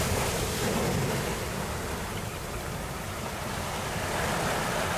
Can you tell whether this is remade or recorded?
recorded